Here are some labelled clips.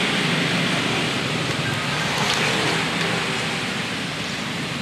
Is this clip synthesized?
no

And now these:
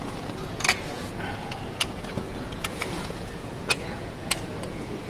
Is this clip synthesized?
yes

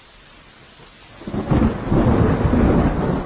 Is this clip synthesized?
no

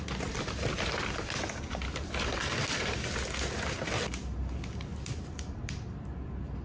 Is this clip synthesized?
no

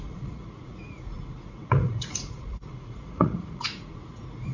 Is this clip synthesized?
yes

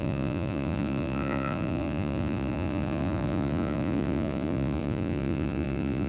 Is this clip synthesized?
yes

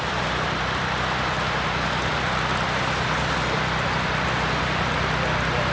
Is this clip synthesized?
no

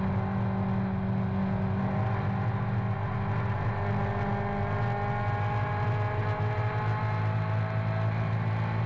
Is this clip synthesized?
no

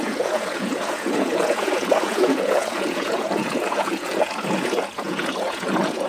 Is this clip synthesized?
yes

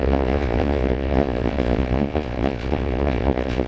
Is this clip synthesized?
yes